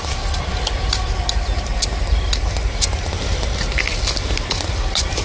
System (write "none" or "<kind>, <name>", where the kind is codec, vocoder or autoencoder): none